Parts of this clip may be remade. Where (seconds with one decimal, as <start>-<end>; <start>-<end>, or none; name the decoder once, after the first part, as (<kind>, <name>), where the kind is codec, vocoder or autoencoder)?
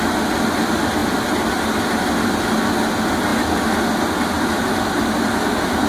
none